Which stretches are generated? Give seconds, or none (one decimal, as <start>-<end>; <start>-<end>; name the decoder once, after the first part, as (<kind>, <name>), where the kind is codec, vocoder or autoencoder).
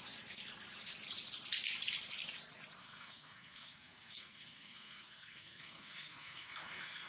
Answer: 2.8-7.1 (codec, SNAC)